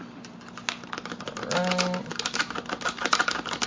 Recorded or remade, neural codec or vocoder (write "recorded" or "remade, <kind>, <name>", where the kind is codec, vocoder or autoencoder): recorded